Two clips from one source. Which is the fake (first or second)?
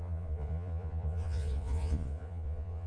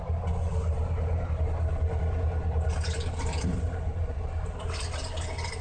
first